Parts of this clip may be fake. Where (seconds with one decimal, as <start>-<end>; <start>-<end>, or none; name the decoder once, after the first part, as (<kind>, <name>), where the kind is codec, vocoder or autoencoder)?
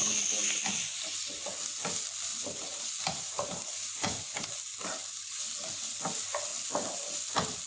2.3-4.5 (vocoder, BigVGAN v2)